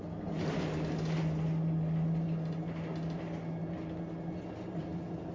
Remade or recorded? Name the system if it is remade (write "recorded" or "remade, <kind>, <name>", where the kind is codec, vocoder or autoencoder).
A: recorded